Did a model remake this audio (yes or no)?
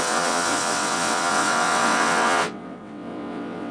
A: yes